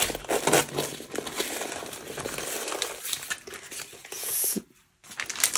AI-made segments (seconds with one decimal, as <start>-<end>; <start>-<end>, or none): 4.0-4.6